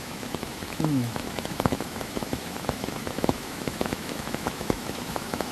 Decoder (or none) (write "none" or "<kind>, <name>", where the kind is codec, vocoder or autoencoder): autoencoder, DAC-VAE